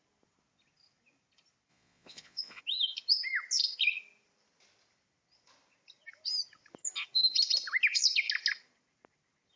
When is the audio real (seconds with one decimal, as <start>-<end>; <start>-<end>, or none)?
0.0-1.7; 2.6-9.6